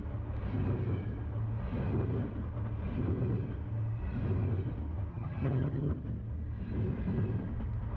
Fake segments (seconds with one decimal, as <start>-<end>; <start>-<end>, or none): 5.1-5.9